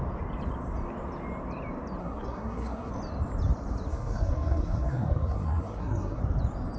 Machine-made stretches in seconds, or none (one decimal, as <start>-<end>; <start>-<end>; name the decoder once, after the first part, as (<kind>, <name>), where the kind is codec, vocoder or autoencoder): 2.0-2.9 (codec, SNAC); 3.9-6.2